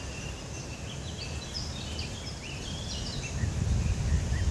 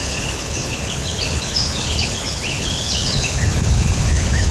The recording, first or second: first